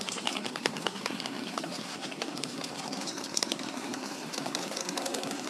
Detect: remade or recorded remade